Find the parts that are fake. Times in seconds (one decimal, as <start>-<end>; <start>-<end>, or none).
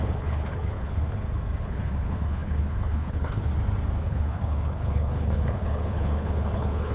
0.0-1.0; 1.6-3.5; 4.0-6.9